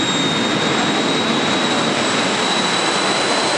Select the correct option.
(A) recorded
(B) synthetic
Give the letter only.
A